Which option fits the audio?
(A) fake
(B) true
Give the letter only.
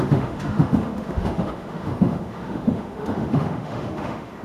A